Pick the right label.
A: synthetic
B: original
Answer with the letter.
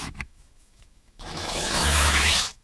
A